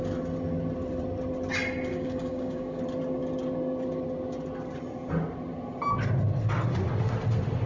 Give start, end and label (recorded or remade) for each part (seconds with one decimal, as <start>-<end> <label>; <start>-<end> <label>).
0.0-1.9 recorded; 1.9-2.8 remade; 2.8-7.7 recorded

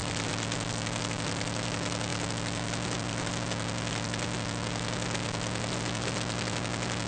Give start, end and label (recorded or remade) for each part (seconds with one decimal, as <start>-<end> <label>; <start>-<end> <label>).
0.0-7.1 recorded

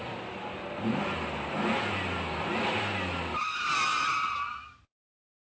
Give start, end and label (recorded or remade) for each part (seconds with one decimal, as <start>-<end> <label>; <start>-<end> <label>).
0.0-5.5 recorded

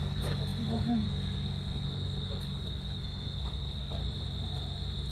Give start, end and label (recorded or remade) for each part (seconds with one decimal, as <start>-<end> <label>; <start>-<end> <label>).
0.0-4.0 remade; 4.0-5.1 recorded